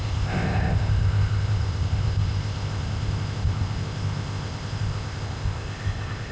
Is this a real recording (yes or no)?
no